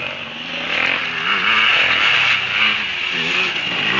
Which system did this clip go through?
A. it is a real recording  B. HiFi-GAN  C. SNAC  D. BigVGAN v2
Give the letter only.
A